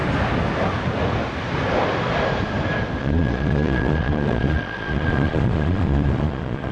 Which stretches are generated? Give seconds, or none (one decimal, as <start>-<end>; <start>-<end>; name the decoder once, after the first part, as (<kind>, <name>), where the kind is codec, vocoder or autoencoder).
3.0-6.7 (vocoder, Vocos)